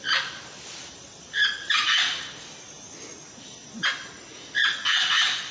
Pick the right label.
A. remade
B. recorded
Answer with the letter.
B